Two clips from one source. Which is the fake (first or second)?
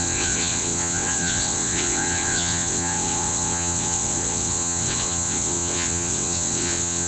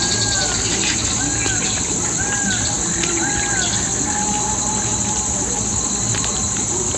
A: first